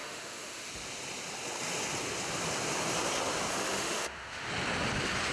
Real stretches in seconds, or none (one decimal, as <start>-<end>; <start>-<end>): 0.7-3.5; 4.5-5.3